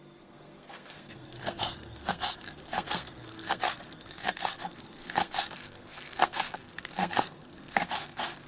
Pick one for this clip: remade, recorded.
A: remade